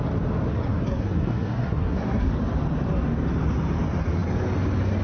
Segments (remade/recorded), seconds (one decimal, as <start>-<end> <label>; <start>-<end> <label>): 0.0-0.5 recorded; 0.5-2.3 remade; 2.3-5.0 recorded